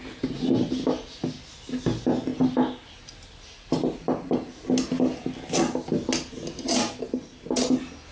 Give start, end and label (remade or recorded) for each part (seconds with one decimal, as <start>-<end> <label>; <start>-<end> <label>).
0.0-8.1 recorded